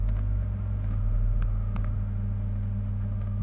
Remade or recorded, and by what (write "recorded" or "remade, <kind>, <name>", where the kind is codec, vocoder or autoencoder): remade, autoencoder, DAC-VAE